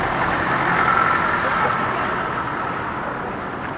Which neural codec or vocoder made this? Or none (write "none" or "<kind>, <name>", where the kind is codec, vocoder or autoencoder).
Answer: none